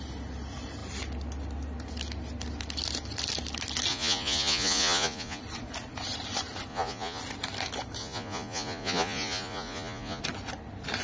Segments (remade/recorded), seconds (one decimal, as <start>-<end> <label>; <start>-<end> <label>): 0.0-3.9 recorded; 3.9-5.4 remade; 5.4-6.7 recorded; 6.7-7.2 remade; 7.2-8.0 recorded; 8.0-10.2 remade; 10.2-11.0 recorded